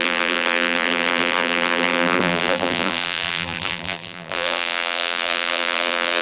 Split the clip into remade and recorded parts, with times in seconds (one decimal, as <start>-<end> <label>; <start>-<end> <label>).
0.0-6.2 remade